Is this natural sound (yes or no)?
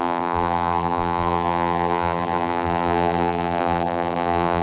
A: no